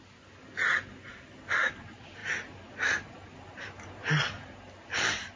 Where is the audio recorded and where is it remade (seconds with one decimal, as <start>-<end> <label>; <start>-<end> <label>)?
0.0-5.4 recorded